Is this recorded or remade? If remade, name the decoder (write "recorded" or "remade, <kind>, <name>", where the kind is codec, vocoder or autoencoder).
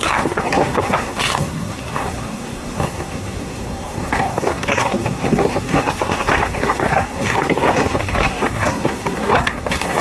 remade, codec, SNAC